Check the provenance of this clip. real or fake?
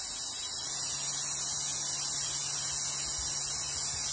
real